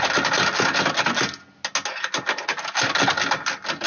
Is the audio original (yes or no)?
yes